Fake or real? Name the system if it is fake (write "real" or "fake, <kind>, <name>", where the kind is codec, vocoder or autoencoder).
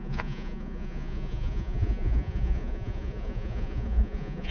fake, vocoder, Vocos